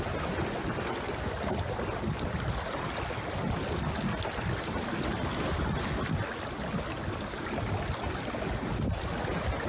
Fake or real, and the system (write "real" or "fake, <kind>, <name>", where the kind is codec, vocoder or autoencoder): real